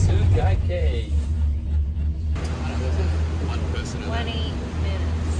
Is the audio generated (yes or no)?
no